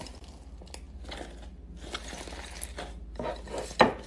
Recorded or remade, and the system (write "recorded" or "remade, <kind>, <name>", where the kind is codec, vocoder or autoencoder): recorded